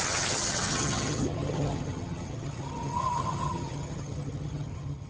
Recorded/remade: remade